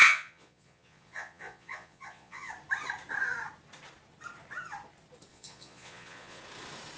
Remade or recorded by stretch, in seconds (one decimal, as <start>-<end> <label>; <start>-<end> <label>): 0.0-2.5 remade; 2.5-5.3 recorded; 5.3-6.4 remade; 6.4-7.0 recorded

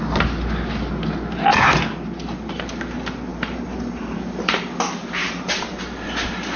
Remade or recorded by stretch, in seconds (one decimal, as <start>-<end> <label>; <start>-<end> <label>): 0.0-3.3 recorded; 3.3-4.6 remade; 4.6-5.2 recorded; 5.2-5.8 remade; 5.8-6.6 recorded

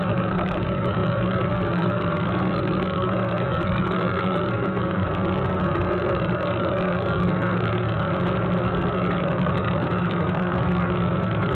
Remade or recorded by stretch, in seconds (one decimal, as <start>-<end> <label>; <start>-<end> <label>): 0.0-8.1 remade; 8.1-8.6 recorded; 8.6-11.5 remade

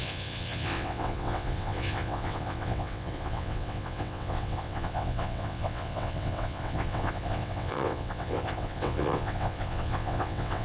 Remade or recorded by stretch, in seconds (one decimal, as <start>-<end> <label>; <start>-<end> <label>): 0.0-10.6 remade

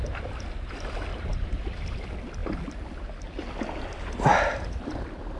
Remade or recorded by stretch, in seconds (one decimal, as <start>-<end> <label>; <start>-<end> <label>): 0.0-1.1 recorded; 1.1-1.6 remade; 1.6-5.4 recorded

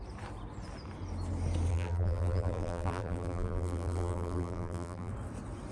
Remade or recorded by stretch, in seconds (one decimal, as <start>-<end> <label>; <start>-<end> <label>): 0.0-1.7 recorded; 1.7-5.1 remade; 5.1-5.7 recorded

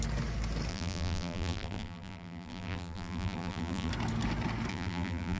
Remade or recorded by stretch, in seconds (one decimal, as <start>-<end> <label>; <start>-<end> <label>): 0.0-0.7 recorded; 0.7-3.9 remade; 3.9-4.7 recorded; 4.7-5.4 remade

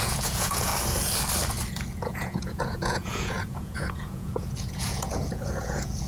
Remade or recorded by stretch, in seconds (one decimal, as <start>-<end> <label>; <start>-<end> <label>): 0.0-0.7 remade; 0.7-2.0 recorded; 2.0-6.1 remade